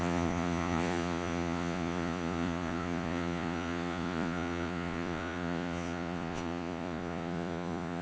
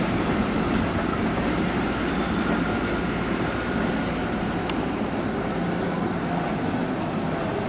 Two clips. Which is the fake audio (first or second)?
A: first